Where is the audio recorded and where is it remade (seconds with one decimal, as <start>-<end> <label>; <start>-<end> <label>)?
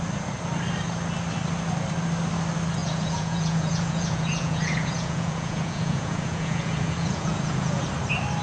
0.0-2.8 recorded; 2.8-7.8 remade; 7.8-8.4 recorded